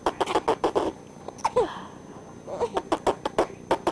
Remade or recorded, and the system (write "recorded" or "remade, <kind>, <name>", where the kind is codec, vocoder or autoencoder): recorded